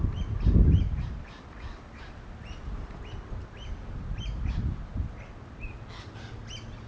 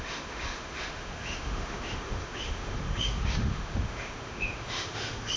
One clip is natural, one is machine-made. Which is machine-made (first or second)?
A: second